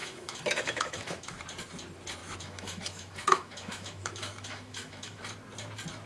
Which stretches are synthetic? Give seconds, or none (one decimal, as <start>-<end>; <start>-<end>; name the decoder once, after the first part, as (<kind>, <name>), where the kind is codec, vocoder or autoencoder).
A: 0.0-1.4 (autoencoder, DAC-VAE); 2.2-5.2